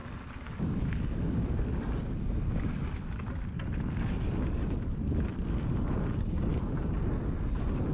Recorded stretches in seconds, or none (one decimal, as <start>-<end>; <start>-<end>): 0.0-7.9